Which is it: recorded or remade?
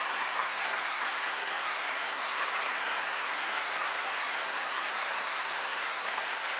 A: remade